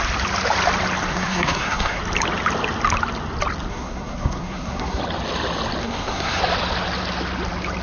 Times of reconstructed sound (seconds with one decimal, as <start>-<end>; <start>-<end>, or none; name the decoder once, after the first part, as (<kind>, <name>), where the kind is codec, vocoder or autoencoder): 1.1-2.0 (codec, SNAC); 3.7-5.0; 5.8-6.4